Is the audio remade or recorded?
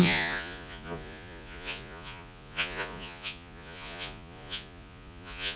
remade